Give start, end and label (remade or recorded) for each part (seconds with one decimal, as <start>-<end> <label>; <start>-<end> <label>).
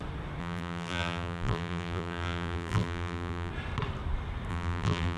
0.0-0.4 recorded; 0.4-3.5 remade; 3.5-4.5 recorded; 4.5-5.2 remade